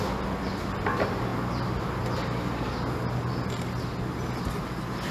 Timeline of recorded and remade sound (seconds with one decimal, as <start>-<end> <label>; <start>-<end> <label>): 0.0-5.1 recorded